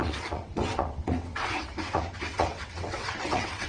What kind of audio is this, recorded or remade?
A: remade